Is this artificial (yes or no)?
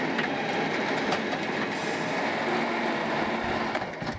no